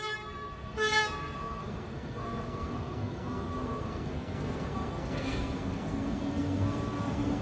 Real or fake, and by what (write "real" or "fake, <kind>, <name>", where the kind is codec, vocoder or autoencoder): fake, codec, SNAC